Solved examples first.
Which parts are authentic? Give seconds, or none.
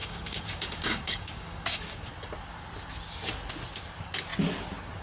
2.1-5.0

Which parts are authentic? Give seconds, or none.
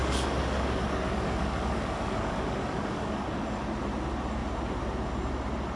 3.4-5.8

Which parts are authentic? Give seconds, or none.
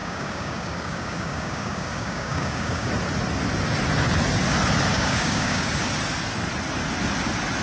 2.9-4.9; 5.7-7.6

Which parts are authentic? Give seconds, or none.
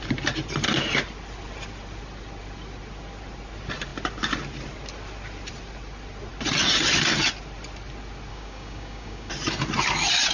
0.0-8.3; 9.3-10.3